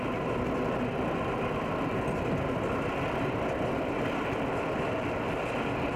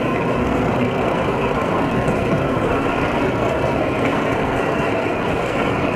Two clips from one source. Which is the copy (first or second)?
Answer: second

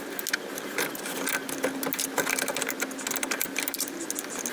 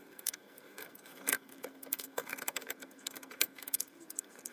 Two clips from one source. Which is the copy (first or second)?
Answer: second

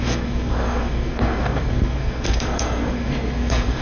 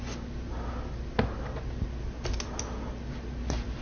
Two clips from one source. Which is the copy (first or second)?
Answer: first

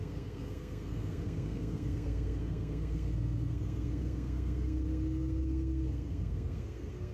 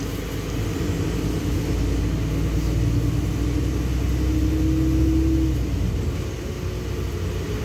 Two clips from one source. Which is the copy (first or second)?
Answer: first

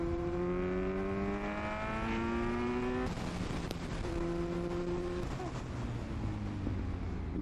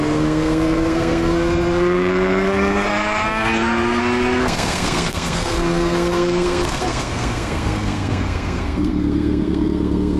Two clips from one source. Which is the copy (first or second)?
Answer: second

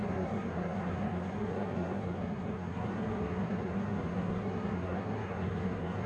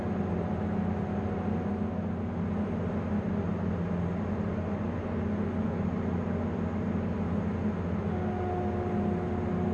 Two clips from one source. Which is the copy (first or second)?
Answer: first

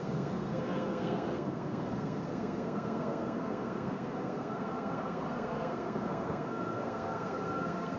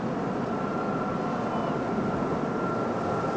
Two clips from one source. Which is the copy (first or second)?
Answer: first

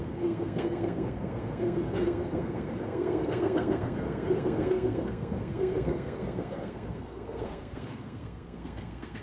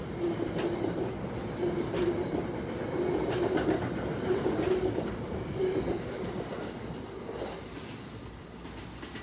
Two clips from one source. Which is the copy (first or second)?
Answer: first